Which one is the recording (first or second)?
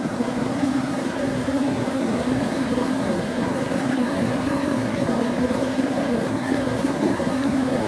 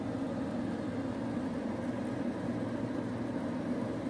second